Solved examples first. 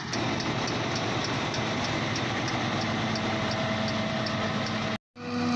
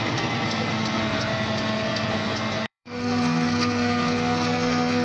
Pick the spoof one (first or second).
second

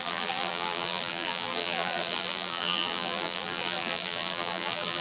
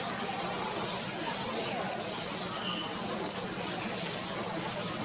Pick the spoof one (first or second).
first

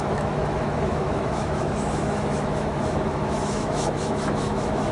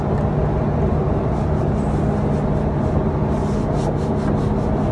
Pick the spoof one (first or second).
first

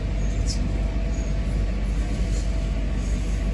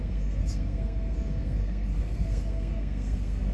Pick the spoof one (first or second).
second